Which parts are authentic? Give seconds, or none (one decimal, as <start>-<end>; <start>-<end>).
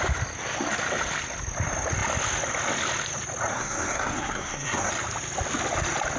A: 0.0-3.5; 4.9-6.2